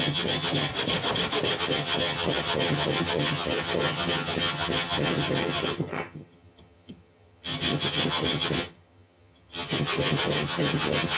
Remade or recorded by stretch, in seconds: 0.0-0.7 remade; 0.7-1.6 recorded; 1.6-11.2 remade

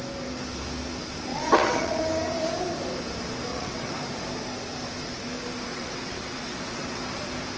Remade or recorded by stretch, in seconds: 0.0-1.3 recorded; 1.3-2.0 remade; 2.0-3.5 recorded; 3.5-4.0 remade; 4.0-5.7 recorded; 5.7-7.0 remade; 7.0-7.6 recorded

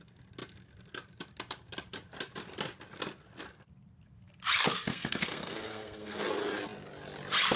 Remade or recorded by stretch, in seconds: 0.0-4.9 recorded; 4.9-6.2 remade; 6.2-7.6 recorded

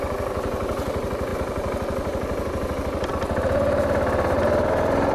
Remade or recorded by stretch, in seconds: 0.0-5.1 recorded

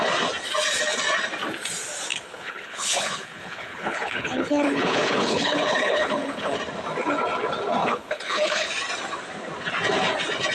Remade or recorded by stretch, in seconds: 0.0-2.1 recorded; 2.1-6.6 remade; 6.6-7.8 recorded; 7.8-8.7 remade; 8.7-10.5 recorded

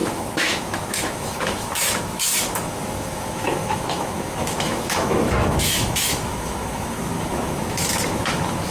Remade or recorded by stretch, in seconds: 0.0-8.7 remade

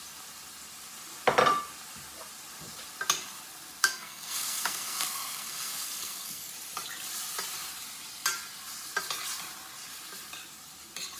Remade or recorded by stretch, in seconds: 0.0-3.8 recorded; 3.8-6.5 remade; 6.5-11.2 recorded